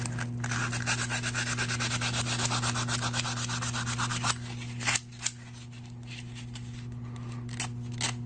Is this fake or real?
real